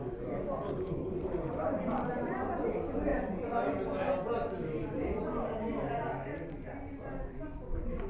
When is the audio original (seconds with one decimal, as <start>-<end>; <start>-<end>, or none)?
0.0-8.1